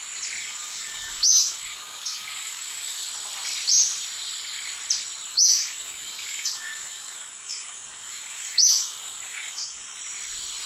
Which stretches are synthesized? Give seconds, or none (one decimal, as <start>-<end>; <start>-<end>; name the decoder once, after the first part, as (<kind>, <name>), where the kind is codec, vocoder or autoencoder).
0.4-3.1 (codec, DAC); 5.3-10.0